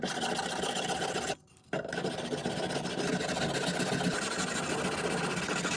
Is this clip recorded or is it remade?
recorded